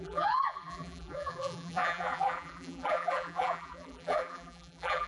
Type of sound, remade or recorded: remade